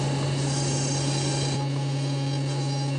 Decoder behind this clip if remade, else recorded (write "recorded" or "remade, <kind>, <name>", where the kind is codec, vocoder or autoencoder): recorded